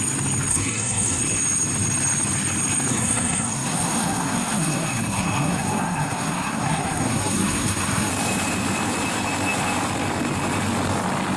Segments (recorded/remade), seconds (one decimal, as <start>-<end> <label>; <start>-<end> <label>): 0.0-0.5 recorded; 0.5-1.2 remade; 1.2-2.9 recorded; 2.9-8.1 remade; 8.1-11.4 recorded